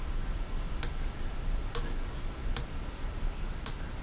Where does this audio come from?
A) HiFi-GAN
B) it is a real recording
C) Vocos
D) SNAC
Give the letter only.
B